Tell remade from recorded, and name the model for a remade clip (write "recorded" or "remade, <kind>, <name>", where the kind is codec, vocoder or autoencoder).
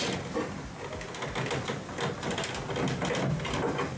recorded